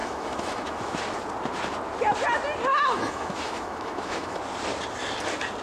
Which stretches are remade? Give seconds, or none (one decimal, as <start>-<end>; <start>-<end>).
0.0-1.0; 2.7-4.4